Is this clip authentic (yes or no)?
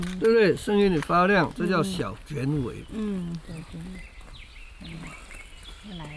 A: yes